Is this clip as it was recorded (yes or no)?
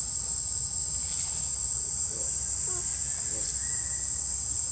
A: yes